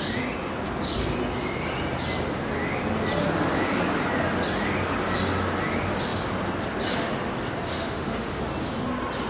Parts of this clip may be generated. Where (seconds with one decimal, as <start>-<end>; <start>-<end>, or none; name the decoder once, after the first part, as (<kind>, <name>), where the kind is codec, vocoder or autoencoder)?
7.7-8.4 (autoencoder, DAC-VAE)